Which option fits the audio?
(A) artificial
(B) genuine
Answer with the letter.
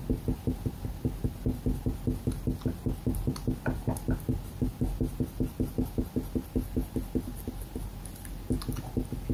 B